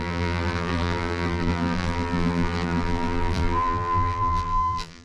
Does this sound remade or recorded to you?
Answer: remade